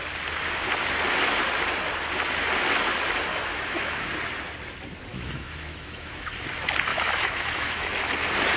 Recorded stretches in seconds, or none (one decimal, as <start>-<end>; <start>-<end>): 0.0-3.3; 4.1-5.1; 6.4-6.9; 7.9-8.6